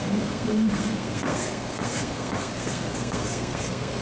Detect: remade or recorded remade